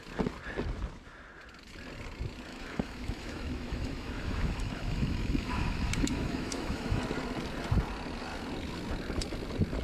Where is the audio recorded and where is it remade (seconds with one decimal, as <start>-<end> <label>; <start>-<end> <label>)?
0.0-2.5 recorded; 2.5-7.0 remade; 7.0-9.8 recorded